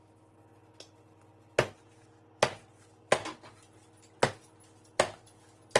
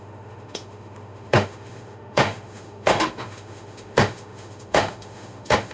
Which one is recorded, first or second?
first